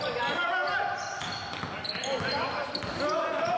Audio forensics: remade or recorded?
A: recorded